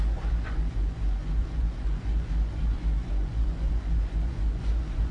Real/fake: fake